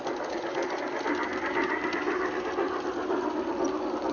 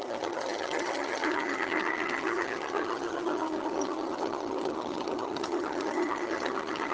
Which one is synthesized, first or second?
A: second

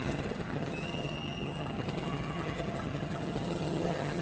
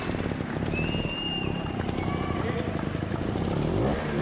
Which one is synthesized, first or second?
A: first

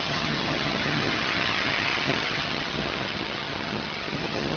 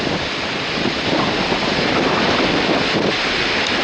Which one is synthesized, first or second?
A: first